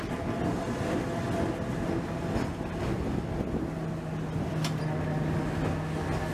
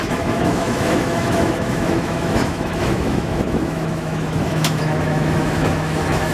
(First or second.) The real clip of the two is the first